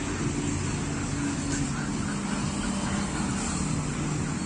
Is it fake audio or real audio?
real